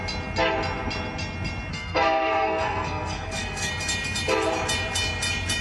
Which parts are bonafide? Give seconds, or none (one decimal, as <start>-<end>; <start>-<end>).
0.0-1.7; 3.7-5.6